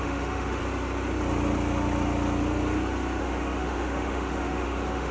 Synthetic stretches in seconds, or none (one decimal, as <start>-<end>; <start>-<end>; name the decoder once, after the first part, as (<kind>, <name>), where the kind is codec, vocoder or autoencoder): 0.0-0.6 (autoencoder, DAC-VAE); 3.2-5.1